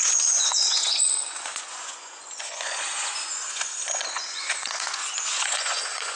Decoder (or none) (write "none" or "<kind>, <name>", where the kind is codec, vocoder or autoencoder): vocoder, Vocos